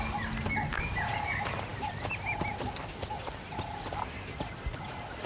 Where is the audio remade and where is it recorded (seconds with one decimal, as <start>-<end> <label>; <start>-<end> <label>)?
0.0-5.3 recorded